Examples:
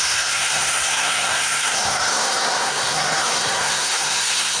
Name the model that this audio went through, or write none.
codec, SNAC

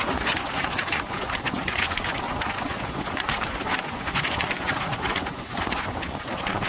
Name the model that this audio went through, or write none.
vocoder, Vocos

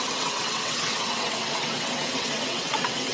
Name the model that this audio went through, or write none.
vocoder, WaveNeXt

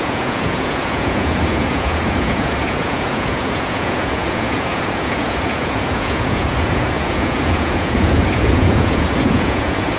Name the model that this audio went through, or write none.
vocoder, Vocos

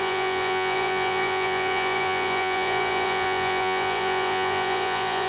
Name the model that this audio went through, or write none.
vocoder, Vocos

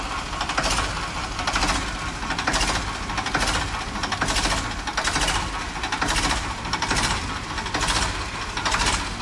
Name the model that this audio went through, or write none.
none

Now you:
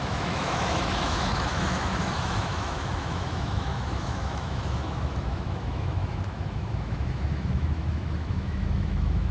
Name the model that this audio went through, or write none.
autoencoder, DAC-VAE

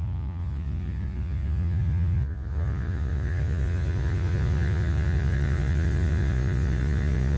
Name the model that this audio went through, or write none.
vocoder, Vocos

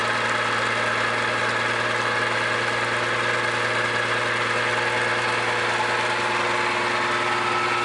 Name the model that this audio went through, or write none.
none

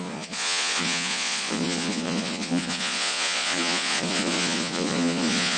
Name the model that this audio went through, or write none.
vocoder, Vocos